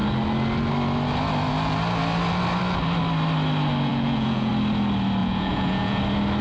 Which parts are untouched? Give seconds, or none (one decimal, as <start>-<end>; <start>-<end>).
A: 0.0-3.9; 4.5-5.2; 6.0-6.4